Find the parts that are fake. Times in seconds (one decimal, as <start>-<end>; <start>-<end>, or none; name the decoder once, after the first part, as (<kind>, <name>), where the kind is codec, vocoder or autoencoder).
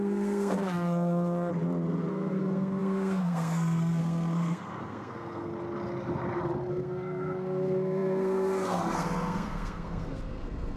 0.0-1.5 (codec, SNAC); 2.1-5.5; 6.7-10.8